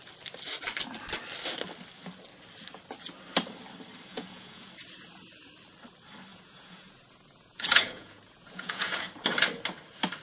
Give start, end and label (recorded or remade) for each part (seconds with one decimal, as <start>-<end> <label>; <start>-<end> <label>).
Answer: 0.0-4.1 recorded; 4.1-4.7 remade; 4.7-6.3 recorded; 6.3-9.0 remade; 9.0-10.2 recorded